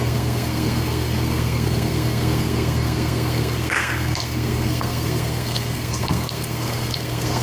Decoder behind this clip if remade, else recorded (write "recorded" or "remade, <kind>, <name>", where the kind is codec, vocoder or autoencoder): remade, codec, SNAC